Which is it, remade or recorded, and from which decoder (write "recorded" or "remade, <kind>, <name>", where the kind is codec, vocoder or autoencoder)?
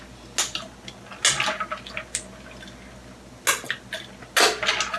recorded